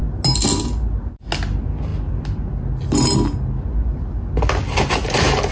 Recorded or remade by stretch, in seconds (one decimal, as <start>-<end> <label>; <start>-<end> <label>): 0.0-5.5 recorded